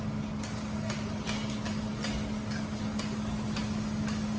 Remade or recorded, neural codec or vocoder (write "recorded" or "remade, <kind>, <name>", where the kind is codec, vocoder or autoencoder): recorded